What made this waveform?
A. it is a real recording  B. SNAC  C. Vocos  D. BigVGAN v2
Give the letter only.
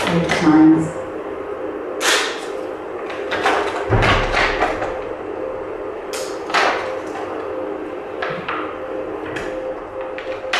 A